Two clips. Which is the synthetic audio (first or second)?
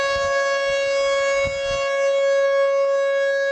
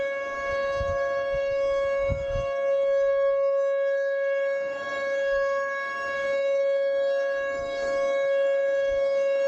second